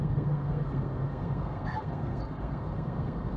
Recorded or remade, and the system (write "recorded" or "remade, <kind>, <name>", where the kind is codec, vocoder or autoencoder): remade, codec, SNAC